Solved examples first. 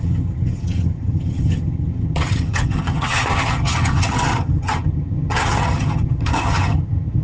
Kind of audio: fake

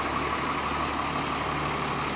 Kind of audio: real